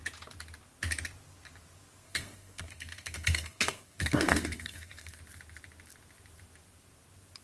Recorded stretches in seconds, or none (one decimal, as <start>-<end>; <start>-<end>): 0.0-2.0; 5.2-7.4